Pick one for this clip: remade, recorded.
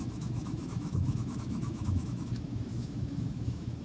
remade